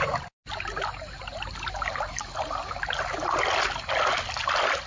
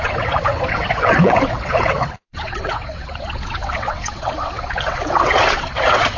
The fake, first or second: second